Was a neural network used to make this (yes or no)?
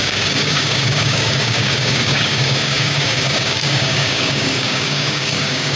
yes